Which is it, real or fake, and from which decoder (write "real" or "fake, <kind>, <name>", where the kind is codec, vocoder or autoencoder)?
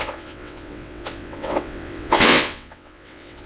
fake, vocoder, WaveNeXt